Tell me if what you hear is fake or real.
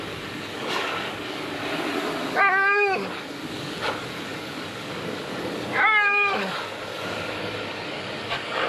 fake